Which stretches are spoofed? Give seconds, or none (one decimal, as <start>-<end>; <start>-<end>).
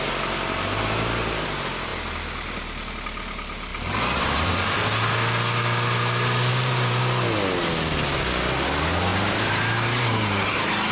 3.7-4.5; 6.5-7.0; 9.1-10.9